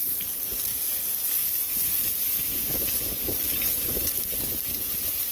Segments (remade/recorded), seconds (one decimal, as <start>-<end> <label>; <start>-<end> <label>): 0.0-5.3 recorded